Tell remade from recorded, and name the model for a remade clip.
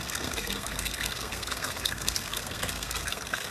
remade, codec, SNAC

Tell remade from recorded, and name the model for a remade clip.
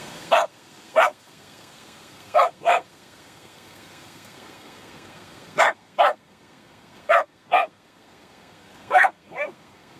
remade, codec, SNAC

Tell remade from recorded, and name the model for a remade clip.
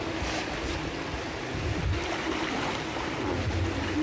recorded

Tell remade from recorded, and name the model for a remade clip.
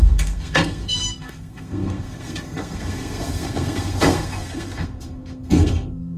remade, codec, SNAC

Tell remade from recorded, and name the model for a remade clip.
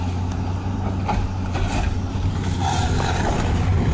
recorded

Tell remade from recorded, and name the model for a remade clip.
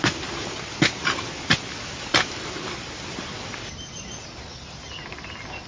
recorded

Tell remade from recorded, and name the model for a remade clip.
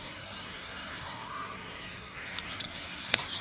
remade, codec, SNAC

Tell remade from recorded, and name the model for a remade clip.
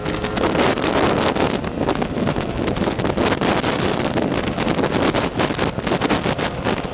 recorded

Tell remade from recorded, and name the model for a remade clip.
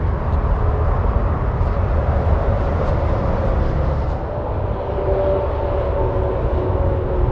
recorded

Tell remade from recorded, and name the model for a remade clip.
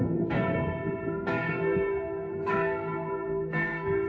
remade, codec, SNAC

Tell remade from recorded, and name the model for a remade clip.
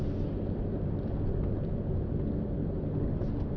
recorded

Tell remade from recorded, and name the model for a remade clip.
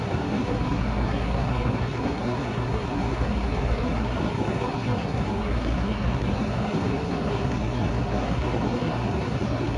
remade, codec, SNAC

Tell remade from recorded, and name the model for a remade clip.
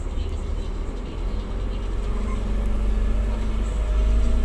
recorded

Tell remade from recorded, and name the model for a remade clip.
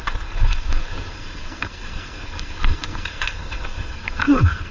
remade, codec, SNAC